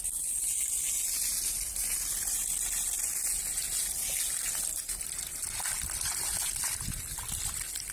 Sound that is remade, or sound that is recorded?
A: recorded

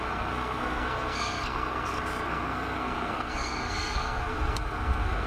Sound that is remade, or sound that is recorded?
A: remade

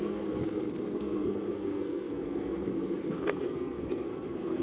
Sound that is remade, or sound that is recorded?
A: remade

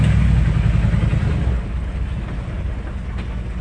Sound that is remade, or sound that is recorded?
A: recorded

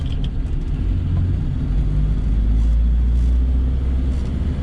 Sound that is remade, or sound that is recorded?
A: recorded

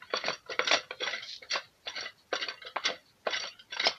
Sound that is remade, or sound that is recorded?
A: recorded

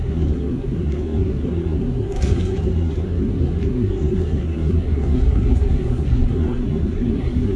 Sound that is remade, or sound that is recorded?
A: remade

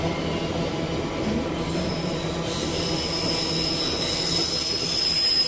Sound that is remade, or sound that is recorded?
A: recorded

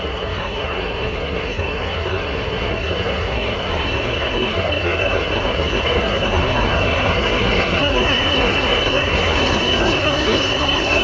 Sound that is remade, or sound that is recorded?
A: remade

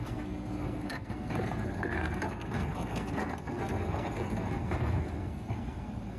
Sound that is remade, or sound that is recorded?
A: remade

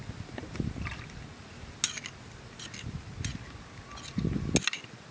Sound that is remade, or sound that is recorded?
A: recorded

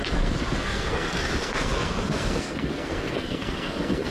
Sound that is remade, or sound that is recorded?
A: remade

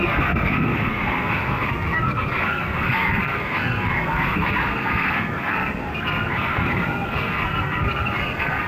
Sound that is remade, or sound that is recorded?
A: remade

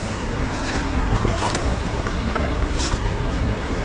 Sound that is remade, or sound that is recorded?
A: remade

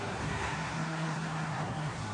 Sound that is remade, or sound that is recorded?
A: remade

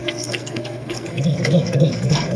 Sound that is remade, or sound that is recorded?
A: remade